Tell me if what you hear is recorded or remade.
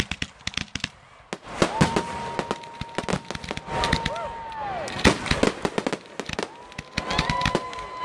recorded